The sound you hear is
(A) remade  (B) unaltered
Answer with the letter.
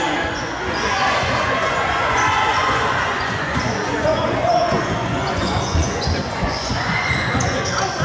A